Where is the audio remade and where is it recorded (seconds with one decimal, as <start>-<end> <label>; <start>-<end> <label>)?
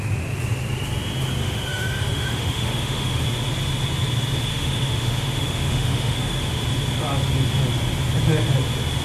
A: 0.0-1.4 recorded; 1.4-3.2 remade; 3.2-4.5 recorded; 4.5-6.6 remade; 6.6-9.0 recorded